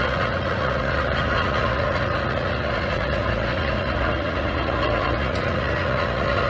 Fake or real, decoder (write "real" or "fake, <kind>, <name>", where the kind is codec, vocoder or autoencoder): fake, vocoder, Vocos